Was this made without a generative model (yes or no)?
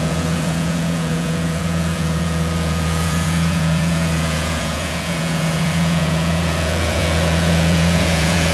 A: no